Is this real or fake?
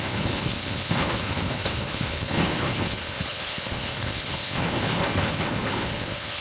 fake